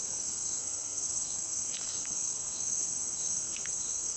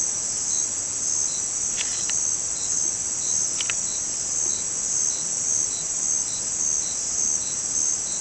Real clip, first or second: second